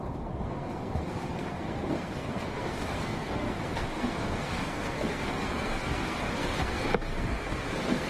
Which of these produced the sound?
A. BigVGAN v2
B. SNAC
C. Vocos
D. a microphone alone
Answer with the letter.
B